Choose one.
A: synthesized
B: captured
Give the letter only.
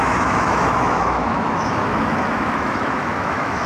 A